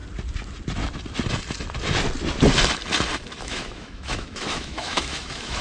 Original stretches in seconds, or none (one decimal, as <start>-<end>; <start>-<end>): 0.0-3.4